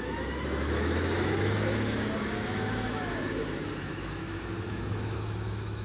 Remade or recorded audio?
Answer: remade